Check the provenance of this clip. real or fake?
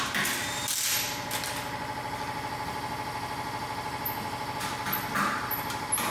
real